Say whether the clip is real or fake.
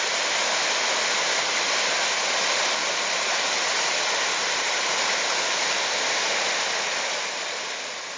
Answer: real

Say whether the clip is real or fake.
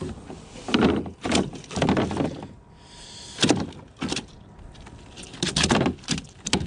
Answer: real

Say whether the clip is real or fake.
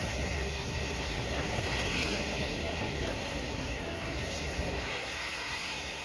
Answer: fake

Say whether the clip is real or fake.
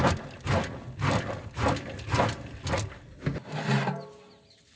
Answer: real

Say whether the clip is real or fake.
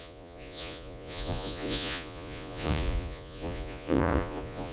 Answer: fake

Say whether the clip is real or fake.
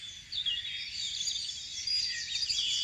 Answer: real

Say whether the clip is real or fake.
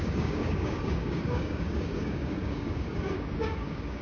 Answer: fake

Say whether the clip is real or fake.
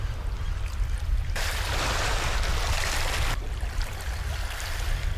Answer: real